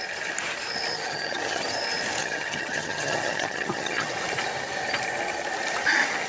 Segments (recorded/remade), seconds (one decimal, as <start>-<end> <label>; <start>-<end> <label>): 0.0-0.9 recorded; 0.9-1.6 remade; 1.6-2.2 recorded; 2.2-4.1 remade; 4.1-6.3 recorded